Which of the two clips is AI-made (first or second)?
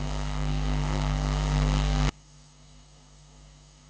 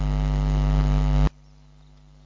first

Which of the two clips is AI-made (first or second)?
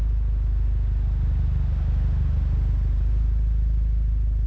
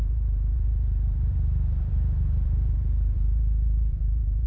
second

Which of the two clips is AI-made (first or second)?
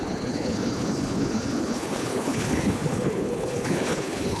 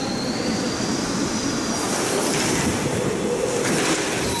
first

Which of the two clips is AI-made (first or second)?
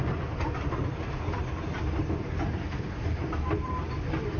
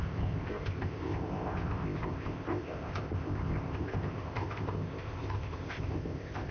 second